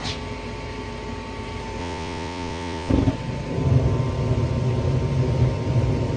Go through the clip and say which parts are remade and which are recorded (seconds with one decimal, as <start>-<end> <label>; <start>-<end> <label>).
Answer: 0.0-1.8 recorded; 1.8-2.9 remade; 2.9-6.2 recorded